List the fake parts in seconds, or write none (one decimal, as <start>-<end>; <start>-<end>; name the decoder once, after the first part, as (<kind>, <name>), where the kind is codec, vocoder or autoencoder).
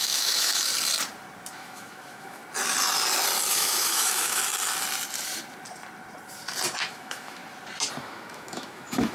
0.0-0.7 (autoencoder, DAC-VAE); 1.5-2.4; 3.5-4.4; 6.9-7.4; 8.0-9.1